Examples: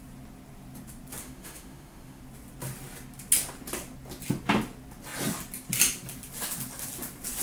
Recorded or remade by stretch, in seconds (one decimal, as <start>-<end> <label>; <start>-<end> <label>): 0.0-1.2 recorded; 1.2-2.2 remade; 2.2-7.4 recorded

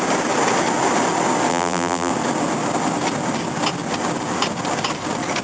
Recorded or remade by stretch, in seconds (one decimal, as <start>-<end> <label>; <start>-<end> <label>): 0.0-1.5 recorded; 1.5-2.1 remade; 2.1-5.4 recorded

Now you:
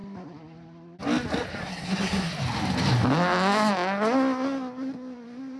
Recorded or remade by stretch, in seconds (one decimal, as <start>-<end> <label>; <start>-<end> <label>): 0.0-1.6 recorded; 1.6-2.3 remade; 2.3-5.6 recorded

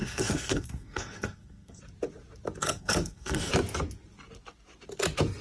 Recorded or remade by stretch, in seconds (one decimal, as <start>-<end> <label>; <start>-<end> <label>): 0.0-1.8 remade; 1.8-2.6 recorded; 2.6-3.5 remade; 3.5-5.4 recorded

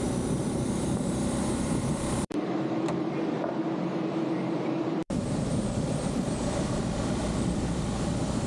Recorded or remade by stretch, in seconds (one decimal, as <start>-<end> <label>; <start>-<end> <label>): 0.0-8.5 remade